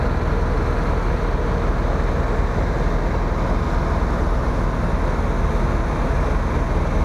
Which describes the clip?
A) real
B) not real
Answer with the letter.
A